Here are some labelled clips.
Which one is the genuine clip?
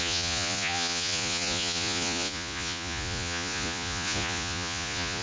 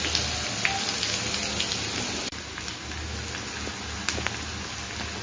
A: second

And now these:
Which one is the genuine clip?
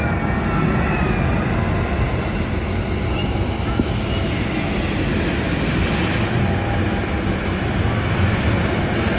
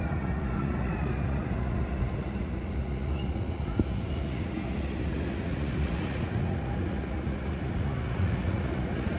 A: first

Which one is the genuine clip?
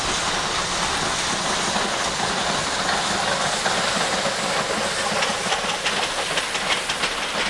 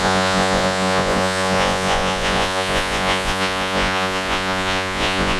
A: first